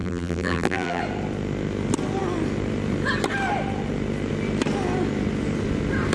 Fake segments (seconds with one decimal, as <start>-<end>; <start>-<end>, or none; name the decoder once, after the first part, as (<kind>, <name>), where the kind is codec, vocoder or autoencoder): 0.0-1.0 (vocoder, BigVGAN v2)